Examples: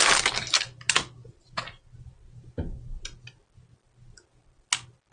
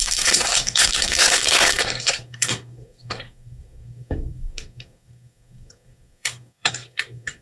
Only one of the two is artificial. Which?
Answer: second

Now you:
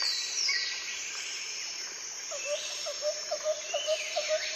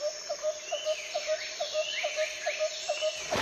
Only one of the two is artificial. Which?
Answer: first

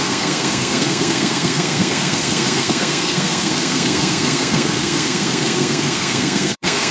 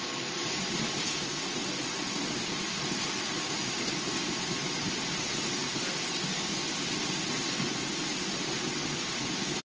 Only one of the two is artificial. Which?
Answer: first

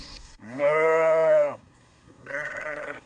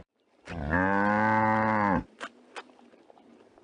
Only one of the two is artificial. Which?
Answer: first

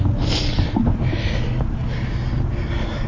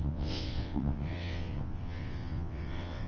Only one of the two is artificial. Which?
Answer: second